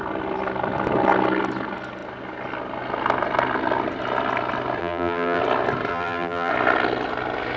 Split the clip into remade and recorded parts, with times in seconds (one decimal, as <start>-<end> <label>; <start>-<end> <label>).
0.0-4.8 recorded; 4.8-5.4 remade; 5.4-5.9 recorded; 5.9-6.5 remade; 6.5-7.6 recorded